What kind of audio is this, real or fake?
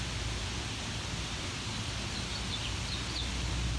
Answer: real